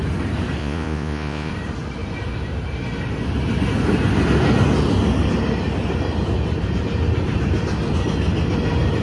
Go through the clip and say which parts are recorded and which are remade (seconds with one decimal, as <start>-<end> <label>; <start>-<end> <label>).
0.0-0.6 recorded; 0.6-1.5 remade; 1.5-9.0 recorded